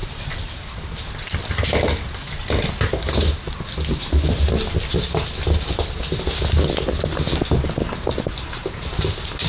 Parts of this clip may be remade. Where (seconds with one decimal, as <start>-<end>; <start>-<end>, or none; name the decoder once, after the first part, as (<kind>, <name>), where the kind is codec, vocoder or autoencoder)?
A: 0.0-1.0 (vocoder, BigVGAN v2)